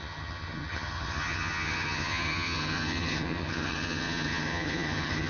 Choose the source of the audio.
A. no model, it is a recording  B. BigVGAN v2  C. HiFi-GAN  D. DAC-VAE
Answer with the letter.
C